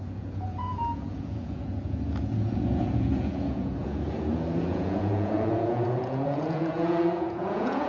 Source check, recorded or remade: remade